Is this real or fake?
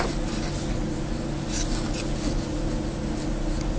real